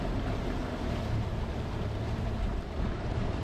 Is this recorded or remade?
remade